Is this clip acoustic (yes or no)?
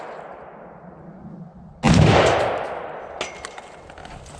yes